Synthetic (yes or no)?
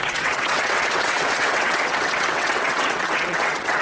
yes